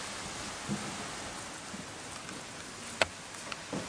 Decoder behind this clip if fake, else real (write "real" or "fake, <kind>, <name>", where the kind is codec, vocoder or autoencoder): real